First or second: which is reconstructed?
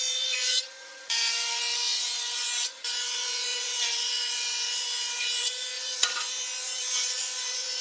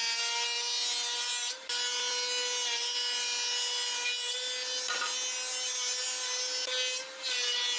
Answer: first